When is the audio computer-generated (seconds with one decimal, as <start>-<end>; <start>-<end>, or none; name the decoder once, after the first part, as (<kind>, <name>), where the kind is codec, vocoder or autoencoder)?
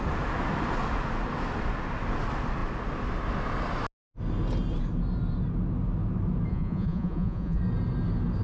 6.5-7.6 (vocoder, Vocos)